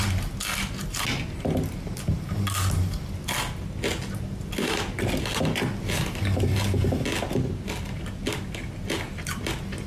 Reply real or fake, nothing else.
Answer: real